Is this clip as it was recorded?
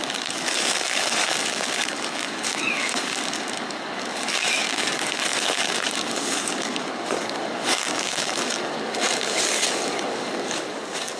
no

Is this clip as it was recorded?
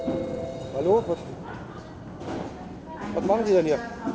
yes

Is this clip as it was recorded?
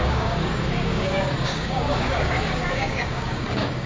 no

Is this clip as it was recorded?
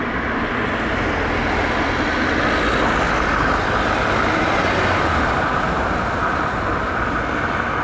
yes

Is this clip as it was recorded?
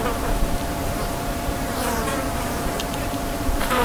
no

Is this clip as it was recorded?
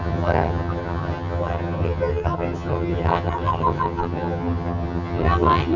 no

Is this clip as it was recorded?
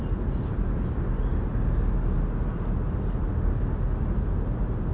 yes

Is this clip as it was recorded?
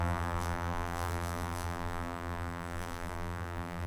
no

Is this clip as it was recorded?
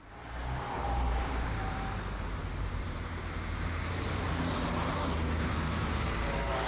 no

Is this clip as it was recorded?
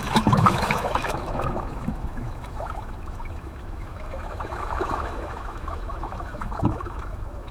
no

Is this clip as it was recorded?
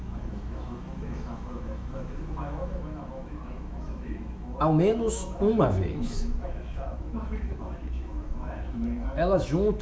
no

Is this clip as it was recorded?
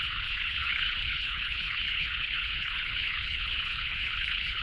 no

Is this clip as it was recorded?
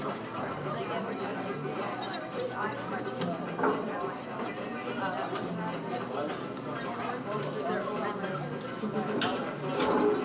yes